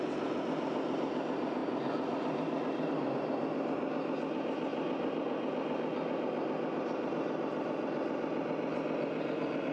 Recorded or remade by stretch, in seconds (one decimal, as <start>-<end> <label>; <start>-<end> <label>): 0.0-9.7 recorded